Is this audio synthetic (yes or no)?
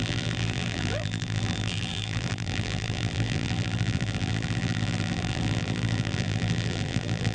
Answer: yes